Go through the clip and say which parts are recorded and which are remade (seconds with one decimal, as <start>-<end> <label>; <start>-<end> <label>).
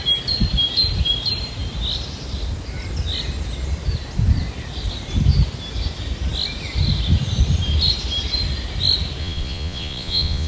0.0-9.2 recorded; 9.2-10.5 remade